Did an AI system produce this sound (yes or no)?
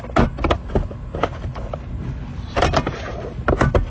no